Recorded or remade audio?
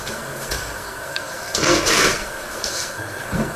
remade